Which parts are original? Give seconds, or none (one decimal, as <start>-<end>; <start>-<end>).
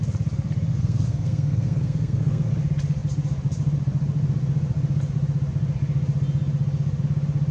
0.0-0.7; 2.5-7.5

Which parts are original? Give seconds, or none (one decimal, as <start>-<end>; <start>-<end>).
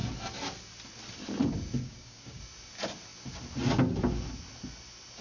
0.0-1.8; 2.4-5.2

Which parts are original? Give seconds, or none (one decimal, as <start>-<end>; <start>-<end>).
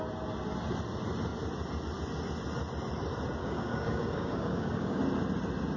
0.0-3.4; 5.0-5.8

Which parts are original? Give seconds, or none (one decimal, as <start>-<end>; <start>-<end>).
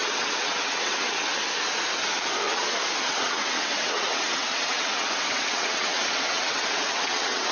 1.3-3.0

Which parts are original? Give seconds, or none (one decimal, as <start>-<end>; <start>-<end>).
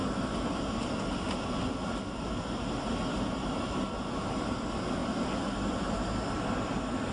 0.0-7.1